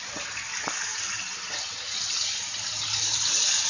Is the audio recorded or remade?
recorded